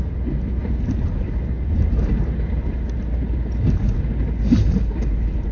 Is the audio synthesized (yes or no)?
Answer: no